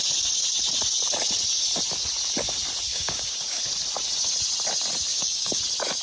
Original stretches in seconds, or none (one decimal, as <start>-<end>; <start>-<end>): 0.0-2.9; 3.6-5.1; 5.6-6.0